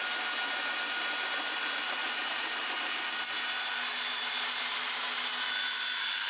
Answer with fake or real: real